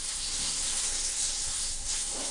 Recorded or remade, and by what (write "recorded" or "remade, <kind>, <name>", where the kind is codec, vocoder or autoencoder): remade, codec, SNAC